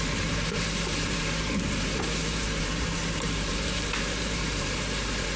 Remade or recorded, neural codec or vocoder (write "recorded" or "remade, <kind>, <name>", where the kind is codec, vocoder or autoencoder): remade, vocoder, BigVGAN v2